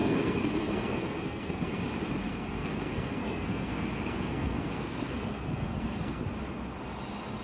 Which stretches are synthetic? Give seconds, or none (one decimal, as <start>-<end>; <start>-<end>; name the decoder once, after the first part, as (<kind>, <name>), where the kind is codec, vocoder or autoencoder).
0.0-1.8 (codec, SNAC); 2.3-6.2